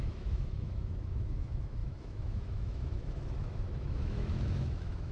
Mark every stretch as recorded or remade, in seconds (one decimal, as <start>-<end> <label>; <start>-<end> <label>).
0.0-5.1 remade